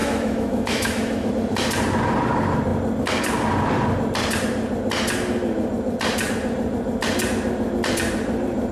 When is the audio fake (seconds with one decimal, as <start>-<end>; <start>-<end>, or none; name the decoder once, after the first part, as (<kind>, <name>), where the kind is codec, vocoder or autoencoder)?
0.0-1.3 (autoencoder, DAC-VAE)